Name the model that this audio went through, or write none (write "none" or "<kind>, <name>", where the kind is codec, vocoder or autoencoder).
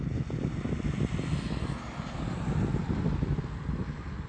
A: none